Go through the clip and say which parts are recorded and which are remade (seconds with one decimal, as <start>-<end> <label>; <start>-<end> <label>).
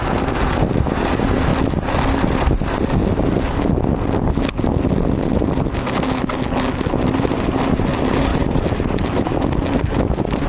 0.0-8.3 recorded; 8.3-9.4 remade; 9.4-10.5 recorded